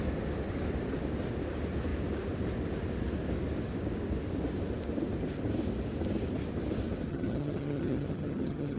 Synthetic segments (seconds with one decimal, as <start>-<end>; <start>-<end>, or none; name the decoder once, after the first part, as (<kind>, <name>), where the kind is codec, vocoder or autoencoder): 7.1-8.8 (vocoder, HiFi-GAN)